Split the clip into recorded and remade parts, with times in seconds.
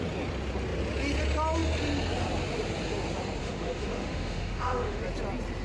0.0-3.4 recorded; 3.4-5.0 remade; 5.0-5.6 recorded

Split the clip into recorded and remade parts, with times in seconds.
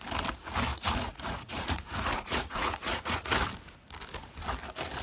0.0-0.7 recorded; 0.7-3.3 remade; 3.3-5.0 recorded